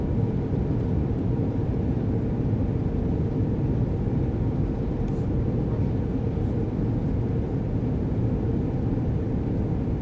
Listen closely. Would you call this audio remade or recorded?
recorded